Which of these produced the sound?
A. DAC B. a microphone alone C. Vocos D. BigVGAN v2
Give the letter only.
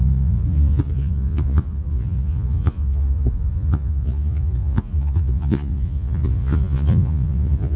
C